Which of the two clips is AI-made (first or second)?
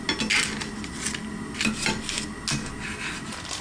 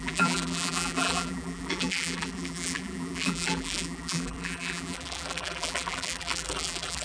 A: second